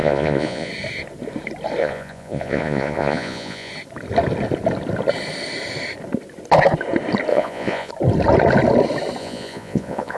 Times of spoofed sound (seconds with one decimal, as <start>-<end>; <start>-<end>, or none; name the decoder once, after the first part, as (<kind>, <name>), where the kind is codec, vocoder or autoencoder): 0.0-0.7 (vocoder, Vocos); 1.8-3.7; 7.3-7.9; 9.2-10.2